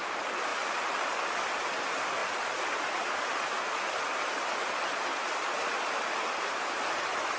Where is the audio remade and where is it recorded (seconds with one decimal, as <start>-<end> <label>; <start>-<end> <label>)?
0.0-7.4 recorded